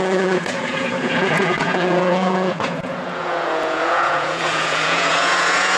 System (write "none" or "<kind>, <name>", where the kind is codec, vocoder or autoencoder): vocoder, Vocos